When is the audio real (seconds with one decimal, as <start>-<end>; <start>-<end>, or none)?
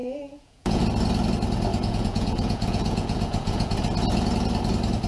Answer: 0.8-1.7; 3.7-5.1